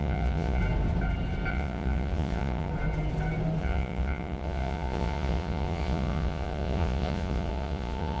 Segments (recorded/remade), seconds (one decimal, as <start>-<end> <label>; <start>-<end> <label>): 0.0-0.6 remade; 0.6-1.5 recorded; 1.5-2.7 remade; 2.7-3.6 recorded; 3.6-8.2 remade